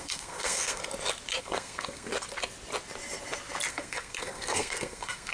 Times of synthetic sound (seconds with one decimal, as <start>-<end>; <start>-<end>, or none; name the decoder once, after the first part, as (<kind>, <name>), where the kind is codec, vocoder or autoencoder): 0.0-0.8 (codec, SNAC); 1.4-2.1; 3.7-5.3